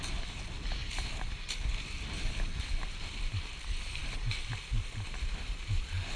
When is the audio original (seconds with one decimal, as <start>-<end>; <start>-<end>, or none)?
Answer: 0.0-6.2